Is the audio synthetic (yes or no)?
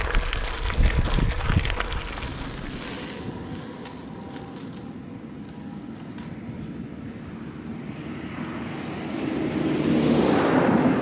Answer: no